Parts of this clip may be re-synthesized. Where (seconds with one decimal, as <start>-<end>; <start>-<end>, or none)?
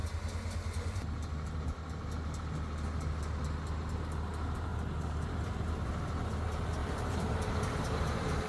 4.7-5.7; 6.8-8.5